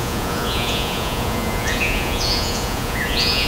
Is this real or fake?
fake